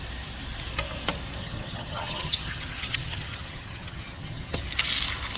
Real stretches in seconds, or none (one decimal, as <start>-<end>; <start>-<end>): 0.0-1.4; 4.6-5.4